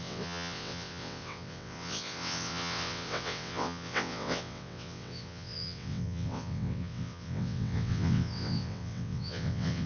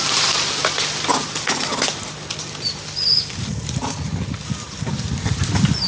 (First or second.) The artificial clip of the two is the first